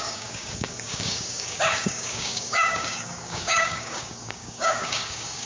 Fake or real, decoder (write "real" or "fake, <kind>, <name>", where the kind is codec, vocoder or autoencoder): fake, codec, DAC